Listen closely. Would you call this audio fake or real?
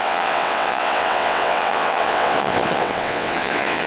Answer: fake